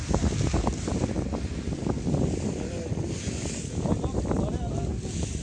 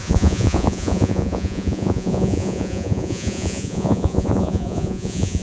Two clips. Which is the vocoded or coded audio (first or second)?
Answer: second